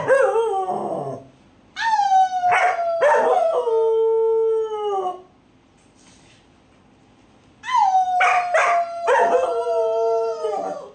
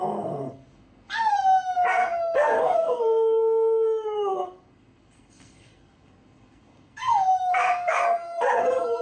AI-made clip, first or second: second